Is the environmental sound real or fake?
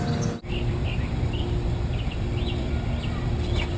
fake